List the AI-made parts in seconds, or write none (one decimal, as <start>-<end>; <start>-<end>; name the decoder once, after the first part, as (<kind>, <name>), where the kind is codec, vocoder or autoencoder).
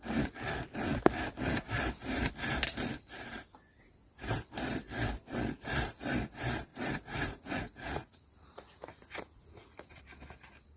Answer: 6.7-10.0 (vocoder, Vocos)